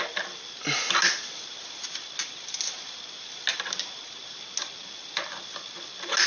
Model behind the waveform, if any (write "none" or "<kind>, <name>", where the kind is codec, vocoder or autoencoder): none